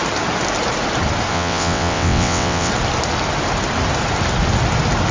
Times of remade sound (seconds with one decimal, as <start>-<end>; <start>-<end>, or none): 1.3-2.7